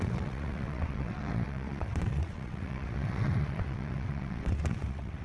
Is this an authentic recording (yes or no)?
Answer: no